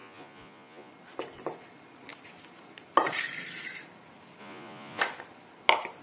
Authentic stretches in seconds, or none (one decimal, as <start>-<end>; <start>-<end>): 0.9-4.4; 5.0-6.0